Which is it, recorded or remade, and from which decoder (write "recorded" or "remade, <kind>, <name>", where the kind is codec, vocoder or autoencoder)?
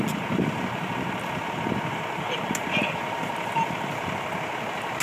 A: recorded